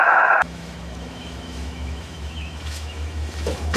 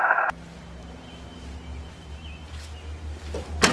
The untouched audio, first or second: second